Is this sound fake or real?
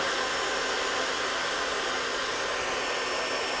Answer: real